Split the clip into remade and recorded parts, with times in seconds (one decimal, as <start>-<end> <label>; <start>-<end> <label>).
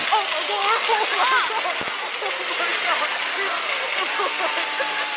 0.0-5.2 recorded